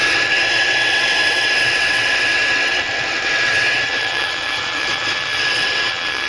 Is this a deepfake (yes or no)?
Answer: yes